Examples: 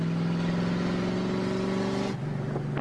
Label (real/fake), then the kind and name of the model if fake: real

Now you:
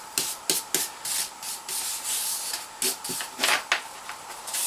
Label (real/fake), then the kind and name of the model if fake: real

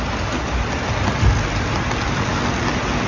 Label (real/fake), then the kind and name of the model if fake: real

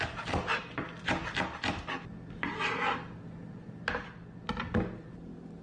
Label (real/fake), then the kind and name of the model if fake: real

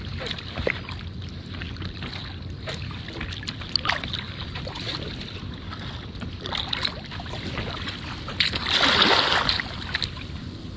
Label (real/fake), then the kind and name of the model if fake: real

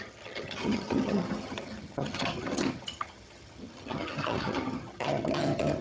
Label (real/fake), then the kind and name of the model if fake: fake, vocoder, HiFi-GAN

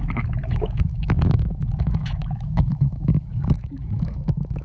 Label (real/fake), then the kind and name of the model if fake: fake, autoencoder, DAC-VAE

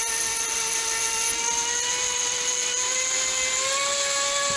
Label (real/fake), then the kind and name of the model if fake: real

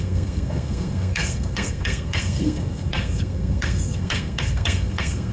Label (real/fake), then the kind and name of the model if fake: fake, codec, SNAC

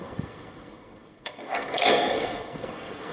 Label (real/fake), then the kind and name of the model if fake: fake, codec, SNAC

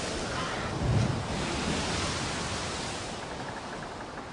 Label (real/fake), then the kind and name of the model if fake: real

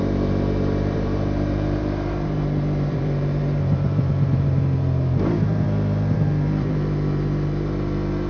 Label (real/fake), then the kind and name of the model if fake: fake, vocoder, BigVGAN v2